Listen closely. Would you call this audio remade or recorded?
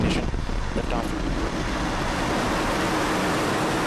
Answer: recorded